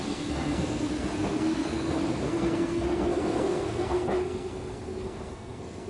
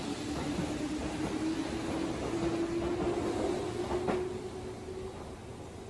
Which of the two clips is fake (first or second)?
first